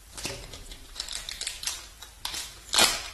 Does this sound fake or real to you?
fake